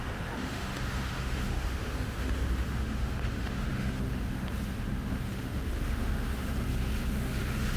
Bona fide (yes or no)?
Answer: no